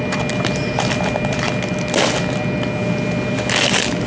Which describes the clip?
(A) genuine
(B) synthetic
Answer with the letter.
A